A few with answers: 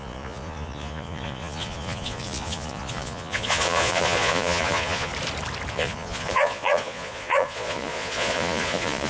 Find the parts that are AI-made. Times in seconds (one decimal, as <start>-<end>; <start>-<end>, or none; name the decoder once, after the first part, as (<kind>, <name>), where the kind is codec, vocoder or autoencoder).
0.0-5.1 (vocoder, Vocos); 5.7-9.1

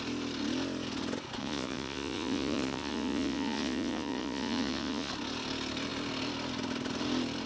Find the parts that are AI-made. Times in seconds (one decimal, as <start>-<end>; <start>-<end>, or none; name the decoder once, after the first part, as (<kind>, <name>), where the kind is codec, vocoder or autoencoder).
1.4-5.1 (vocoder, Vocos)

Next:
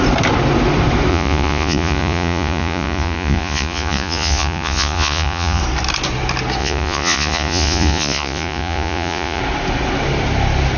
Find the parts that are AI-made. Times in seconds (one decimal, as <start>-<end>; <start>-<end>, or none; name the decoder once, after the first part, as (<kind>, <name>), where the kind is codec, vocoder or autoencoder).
1.1-5.6 (vocoder, Vocos); 6.6-9.4